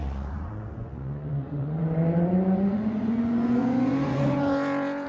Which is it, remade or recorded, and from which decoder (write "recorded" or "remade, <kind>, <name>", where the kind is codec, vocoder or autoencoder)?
remade, vocoder, Vocos